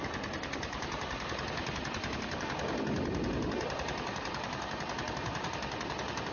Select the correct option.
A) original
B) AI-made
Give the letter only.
A